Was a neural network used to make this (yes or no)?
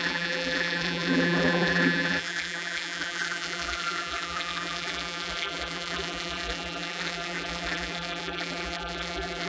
yes